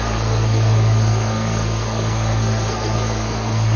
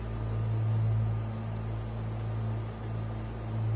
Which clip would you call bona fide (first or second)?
second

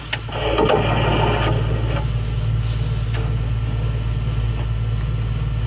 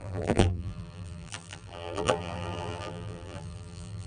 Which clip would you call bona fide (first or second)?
first